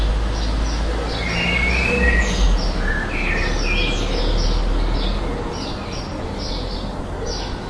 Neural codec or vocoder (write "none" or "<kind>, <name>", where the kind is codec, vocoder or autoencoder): none